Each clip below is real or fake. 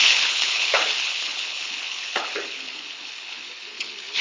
fake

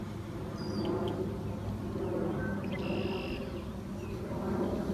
real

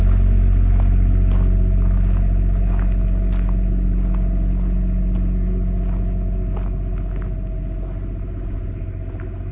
real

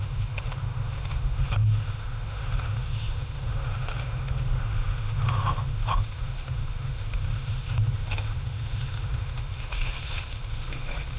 fake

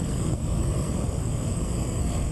fake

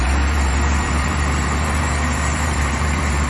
fake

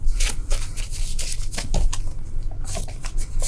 real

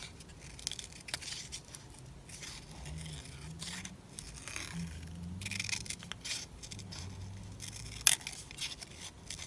real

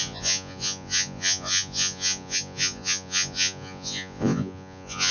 fake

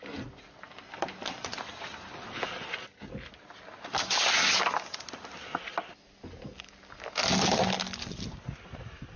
real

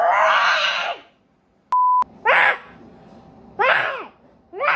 real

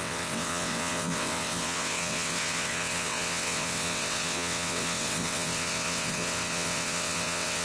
fake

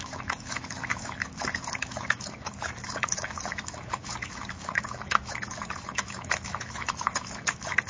fake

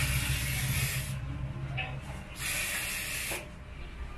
real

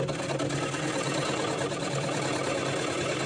real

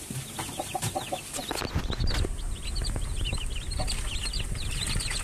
real